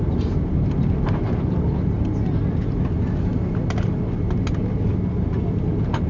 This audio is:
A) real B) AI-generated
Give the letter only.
A